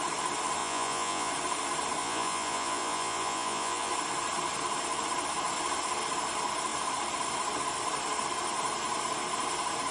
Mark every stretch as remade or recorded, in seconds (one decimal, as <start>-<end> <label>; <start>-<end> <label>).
0.0-0.6 recorded; 0.6-1.3 remade; 1.3-2.0 recorded; 2.0-3.9 remade; 3.9-9.9 recorded